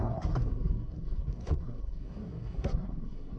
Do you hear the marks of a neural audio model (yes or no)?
yes